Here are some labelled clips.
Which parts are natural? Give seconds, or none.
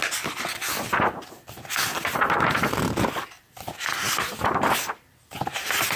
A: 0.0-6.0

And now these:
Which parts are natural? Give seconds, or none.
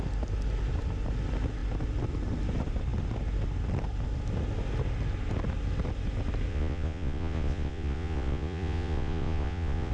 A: 0.0-6.5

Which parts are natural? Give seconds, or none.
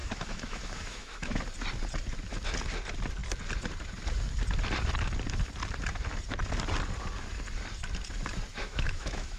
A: 1.4-8.5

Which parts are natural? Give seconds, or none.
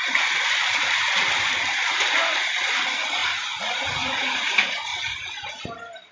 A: 0.0-3.2; 4.5-4.9; 5.5-6.1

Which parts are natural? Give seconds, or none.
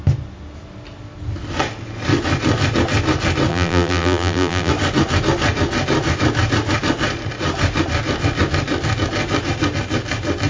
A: 0.0-3.5; 4.7-10.5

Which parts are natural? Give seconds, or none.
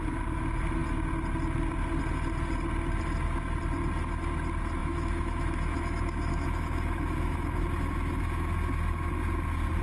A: 0.0-4.8; 9.1-9.8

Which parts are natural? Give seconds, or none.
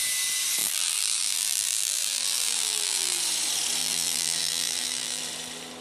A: 0.0-0.6; 3.2-3.8; 5.2-5.8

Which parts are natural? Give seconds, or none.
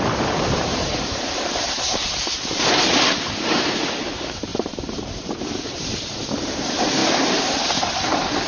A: 7.0-7.8